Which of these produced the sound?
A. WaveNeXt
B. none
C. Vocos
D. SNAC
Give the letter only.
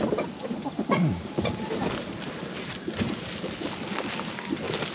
B